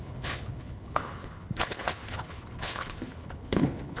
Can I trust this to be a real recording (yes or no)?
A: no